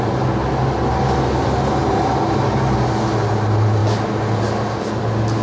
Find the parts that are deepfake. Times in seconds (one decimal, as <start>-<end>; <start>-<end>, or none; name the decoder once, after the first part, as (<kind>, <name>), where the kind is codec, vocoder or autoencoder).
none